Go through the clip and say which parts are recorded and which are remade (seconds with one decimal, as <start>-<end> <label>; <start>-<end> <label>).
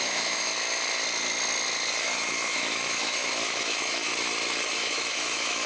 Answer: 0.0-0.5 remade; 0.5-2.0 recorded; 2.0-4.1 remade; 4.1-4.7 recorded; 4.7-5.7 remade